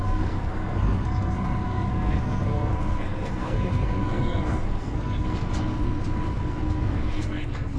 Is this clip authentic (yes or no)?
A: no